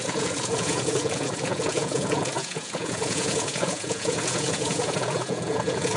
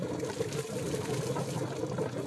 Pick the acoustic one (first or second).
second